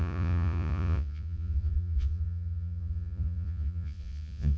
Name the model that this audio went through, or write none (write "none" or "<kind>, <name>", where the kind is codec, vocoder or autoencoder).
vocoder, Vocos